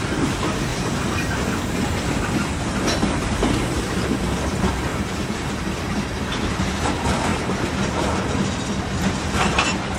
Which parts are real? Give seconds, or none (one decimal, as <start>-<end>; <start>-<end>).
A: 0.0-0.7; 1.6-4.9; 6.3-10.0